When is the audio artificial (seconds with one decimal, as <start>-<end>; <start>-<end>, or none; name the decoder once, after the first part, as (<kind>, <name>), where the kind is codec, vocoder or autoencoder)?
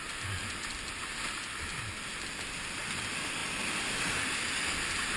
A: none